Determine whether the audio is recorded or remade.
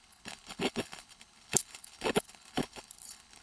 remade